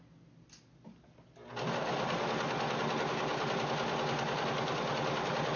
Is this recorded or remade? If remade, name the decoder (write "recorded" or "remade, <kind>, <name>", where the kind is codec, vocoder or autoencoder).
recorded